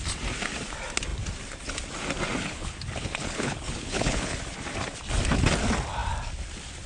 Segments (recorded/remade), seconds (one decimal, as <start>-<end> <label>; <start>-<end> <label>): 0.0-2.4 recorded; 2.4-4.4 remade; 4.4-6.9 recorded